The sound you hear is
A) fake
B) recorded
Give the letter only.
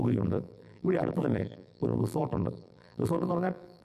A